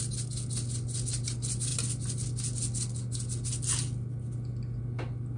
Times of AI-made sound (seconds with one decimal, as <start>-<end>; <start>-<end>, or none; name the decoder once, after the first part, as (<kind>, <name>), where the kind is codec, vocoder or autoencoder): none